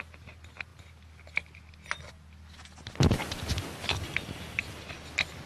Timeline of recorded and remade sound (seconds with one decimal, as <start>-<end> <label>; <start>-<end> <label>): 0.0-5.5 recorded